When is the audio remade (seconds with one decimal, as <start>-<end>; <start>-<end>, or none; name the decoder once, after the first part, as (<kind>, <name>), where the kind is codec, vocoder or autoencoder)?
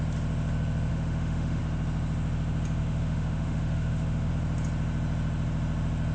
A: 0.9-1.6 (autoencoder, DAC-VAE); 2.8-4.3